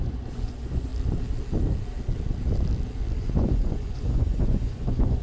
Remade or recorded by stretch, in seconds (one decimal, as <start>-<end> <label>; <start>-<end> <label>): 0.0-0.9 remade; 0.9-3.2 recorded; 3.2-5.2 remade